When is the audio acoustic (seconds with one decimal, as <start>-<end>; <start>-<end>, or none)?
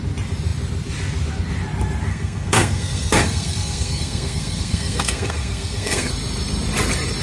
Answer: 0.0-2.1; 6.1-7.2